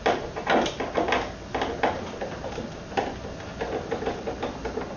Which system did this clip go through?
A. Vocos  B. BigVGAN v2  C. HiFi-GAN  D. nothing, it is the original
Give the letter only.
D